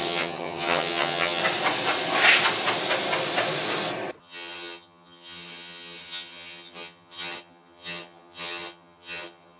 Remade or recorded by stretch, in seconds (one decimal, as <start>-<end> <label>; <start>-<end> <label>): 0.0-1.4 remade; 1.4-4.2 recorded; 4.2-9.6 remade